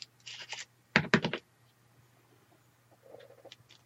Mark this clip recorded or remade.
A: recorded